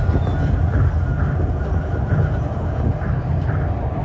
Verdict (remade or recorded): recorded